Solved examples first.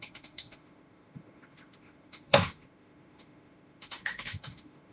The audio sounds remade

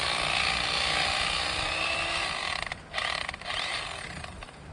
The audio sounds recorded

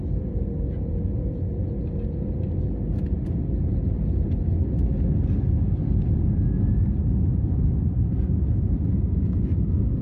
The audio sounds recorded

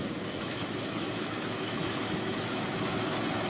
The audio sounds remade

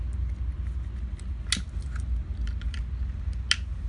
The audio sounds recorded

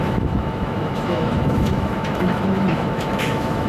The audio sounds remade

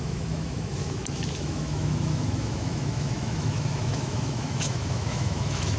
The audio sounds remade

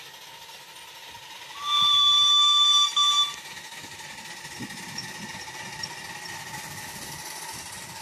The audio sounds recorded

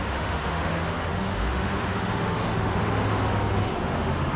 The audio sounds remade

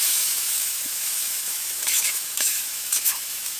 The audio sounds remade